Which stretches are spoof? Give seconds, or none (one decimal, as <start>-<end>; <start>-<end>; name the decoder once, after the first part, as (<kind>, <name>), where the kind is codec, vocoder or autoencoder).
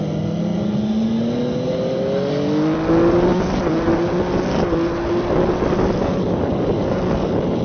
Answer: none